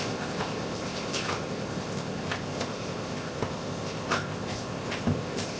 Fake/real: fake